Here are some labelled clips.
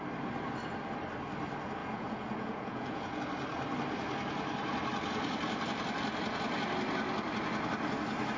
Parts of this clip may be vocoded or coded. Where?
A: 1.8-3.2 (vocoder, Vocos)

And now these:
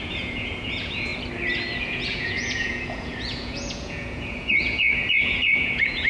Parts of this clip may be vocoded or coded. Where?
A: 0.0-1.1 (vocoder, Vocos); 1.8-6.1

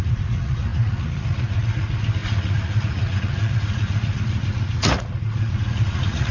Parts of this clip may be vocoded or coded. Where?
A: 0.0-6.3 (vocoder, Vocos)

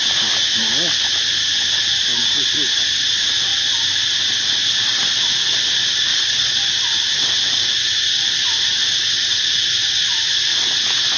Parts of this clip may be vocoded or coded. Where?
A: 6.1-6.6 (vocoder, Vocos)

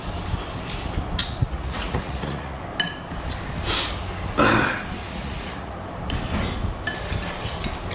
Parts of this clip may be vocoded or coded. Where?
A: 1.2-2.6 (vocoder, Vocos); 5.0-5.7

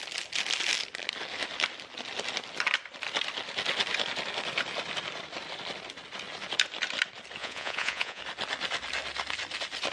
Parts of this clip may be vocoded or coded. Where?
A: 7.4-8.2 (vocoder, Vocos)

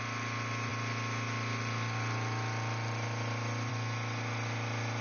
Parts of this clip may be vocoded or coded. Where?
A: none

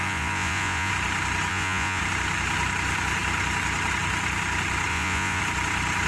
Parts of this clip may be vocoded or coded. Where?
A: 0.0-0.9 (vocoder, Vocos); 1.5-2.0; 4.9-5.4